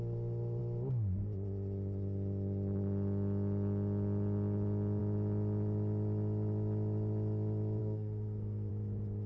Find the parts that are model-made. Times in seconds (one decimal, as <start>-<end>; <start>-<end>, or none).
7.8-8.7